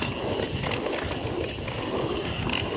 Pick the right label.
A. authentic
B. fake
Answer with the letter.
A